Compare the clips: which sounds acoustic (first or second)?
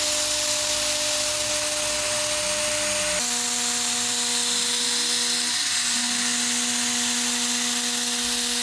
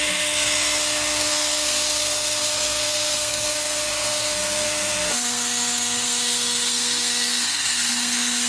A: first